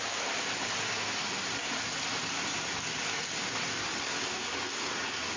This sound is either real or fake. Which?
real